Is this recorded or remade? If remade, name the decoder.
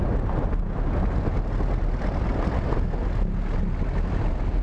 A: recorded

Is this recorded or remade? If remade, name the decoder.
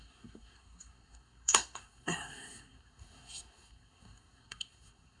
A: remade, codec, SNAC